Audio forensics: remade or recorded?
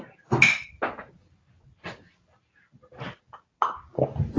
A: recorded